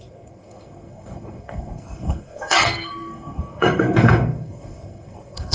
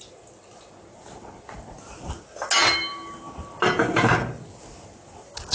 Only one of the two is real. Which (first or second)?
second